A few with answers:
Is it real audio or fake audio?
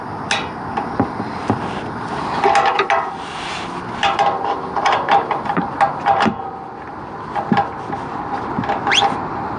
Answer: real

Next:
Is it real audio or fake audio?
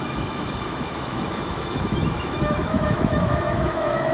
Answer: fake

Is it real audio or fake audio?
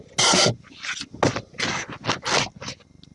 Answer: real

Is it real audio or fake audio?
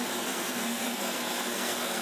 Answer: fake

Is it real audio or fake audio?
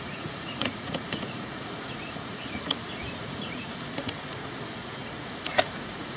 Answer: fake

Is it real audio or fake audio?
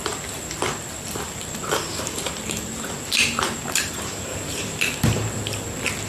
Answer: fake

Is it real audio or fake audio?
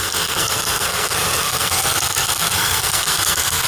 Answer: fake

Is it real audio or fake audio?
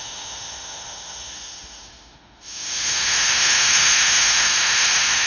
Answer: fake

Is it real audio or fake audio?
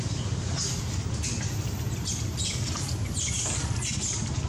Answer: real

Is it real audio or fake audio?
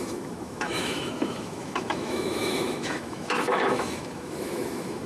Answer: fake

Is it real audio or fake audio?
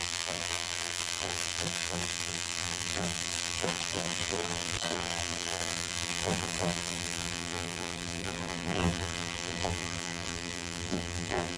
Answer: fake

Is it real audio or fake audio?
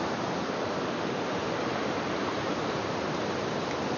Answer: fake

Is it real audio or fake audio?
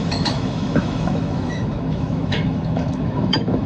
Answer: fake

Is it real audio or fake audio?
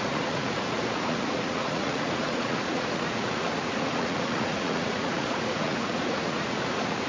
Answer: fake